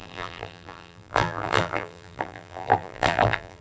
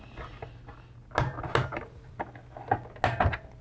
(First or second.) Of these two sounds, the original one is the second